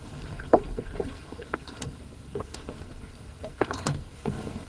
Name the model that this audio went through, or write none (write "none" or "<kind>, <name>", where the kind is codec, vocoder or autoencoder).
codec, SNAC